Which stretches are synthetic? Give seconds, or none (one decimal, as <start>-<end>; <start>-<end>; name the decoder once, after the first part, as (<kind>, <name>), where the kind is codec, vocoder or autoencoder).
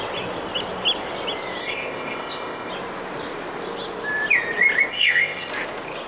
1.6-2.7 (codec, ZipCodec); 4.9-5.5